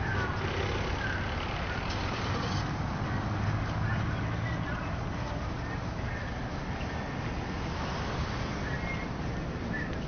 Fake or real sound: real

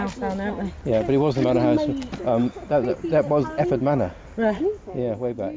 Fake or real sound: real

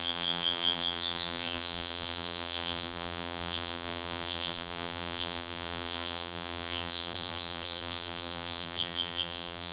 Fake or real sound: fake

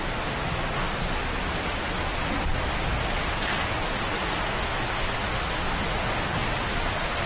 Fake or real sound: real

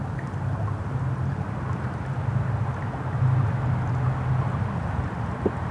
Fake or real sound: real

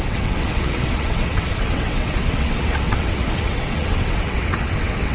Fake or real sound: fake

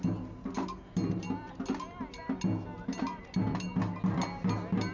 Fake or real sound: real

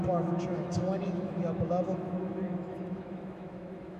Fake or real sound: fake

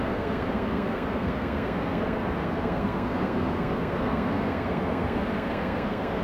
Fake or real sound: fake